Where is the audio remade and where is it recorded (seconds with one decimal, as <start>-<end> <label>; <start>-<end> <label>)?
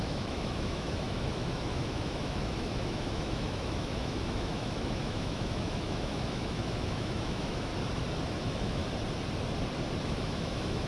0.0-7.7 remade; 7.7-8.3 recorded; 8.3-8.8 remade; 8.8-10.0 recorded; 10.0-10.9 remade